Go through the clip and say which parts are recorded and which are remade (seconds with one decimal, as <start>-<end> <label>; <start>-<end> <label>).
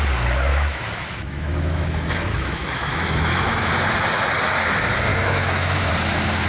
0.0-0.5 recorded; 0.5-3.7 remade; 3.7-5.1 recorded; 5.1-5.9 remade; 5.9-6.5 recorded